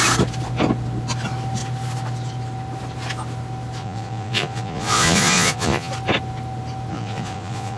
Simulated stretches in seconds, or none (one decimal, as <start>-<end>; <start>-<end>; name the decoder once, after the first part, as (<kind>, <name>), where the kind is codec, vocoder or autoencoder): 3.8-5.9 (vocoder, Vocos); 6.9-7.8